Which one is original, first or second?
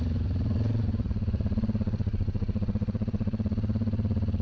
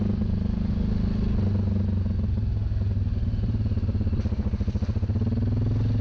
second